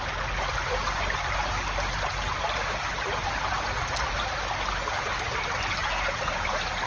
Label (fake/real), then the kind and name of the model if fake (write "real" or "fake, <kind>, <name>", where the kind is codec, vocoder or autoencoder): real